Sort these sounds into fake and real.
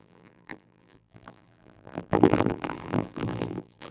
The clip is fake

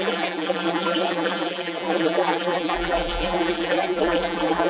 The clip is fake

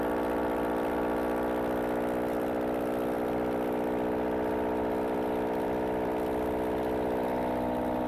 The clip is fake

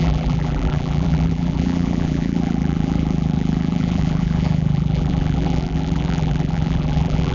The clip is fake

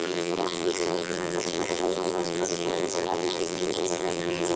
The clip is fake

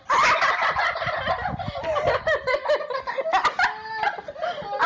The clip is real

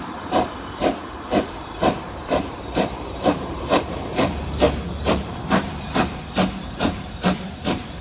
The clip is fake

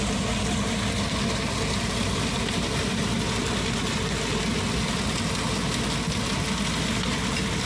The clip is real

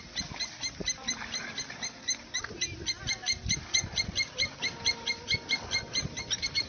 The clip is real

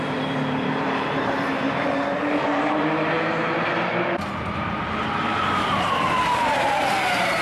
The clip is fake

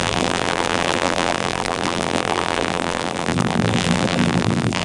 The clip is fake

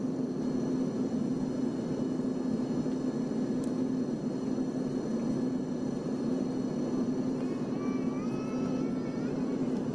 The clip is real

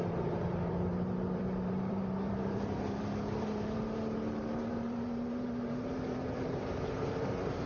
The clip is fake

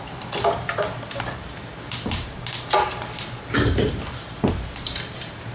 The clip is fake